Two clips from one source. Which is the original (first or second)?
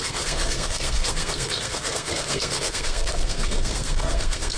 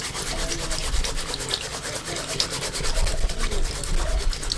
second